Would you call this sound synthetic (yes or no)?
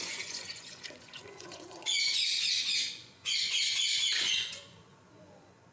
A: yes